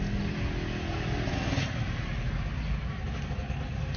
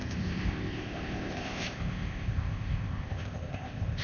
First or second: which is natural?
first